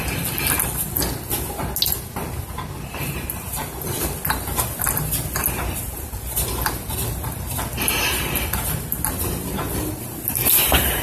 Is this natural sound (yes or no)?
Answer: yes